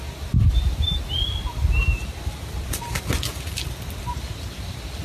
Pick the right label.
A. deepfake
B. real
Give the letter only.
B